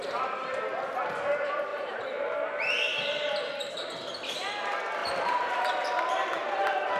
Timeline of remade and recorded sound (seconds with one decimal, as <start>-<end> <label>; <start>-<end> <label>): 0.0-1.7 recorded; 1.7-3.7 remade; 3.7-5.0 recorded; 5.0-7.0 remade